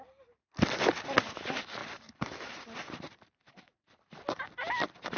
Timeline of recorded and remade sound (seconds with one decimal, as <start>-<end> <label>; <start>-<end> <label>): 0.0-1.8 recorded; 1.8-4.2 remade; 4.2-5.2 recorded